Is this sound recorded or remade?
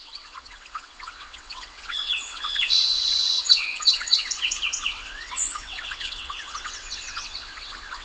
remade